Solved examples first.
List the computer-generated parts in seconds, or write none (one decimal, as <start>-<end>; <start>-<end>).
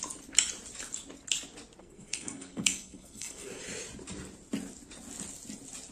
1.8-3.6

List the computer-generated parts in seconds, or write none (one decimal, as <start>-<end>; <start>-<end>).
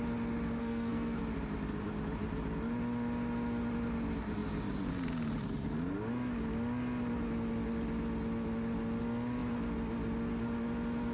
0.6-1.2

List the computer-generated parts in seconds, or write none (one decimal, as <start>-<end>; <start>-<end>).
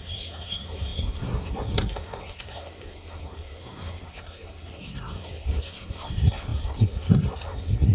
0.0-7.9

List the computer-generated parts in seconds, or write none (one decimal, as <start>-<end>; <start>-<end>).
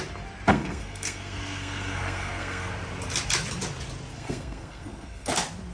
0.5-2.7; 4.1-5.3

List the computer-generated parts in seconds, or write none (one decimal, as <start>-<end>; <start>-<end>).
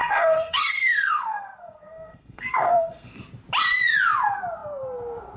0.0-3.2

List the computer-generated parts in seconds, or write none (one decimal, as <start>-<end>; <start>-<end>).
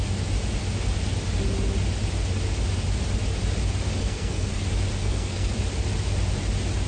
4.0-4.6; 5.0-5.5